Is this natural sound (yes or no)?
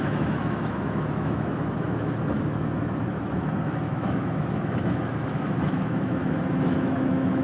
no